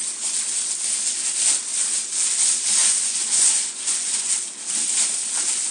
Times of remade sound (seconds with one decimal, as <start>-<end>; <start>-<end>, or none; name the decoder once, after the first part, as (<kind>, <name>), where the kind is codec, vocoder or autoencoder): 2.8-4.3 (vocoder, Vocos)